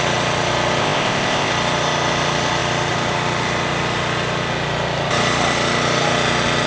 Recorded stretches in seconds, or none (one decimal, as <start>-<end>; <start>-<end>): 0.0-0.8; 1.5-6.7